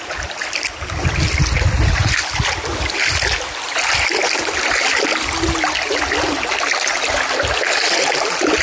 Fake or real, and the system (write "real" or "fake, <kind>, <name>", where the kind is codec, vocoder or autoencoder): real